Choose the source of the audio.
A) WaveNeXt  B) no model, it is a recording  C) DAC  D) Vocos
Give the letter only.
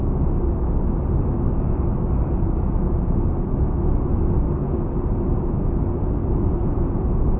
B